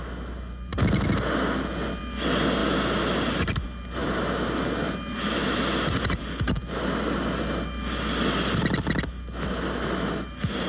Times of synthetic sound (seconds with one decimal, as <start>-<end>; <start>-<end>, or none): none